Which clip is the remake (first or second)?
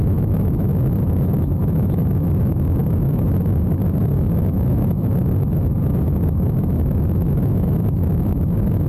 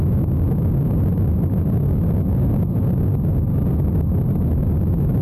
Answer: first